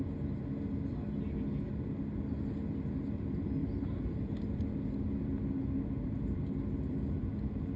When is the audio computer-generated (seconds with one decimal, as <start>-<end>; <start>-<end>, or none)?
3.6-4.3